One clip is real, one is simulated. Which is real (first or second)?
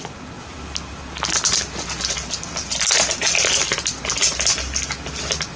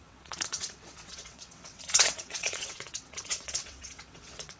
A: first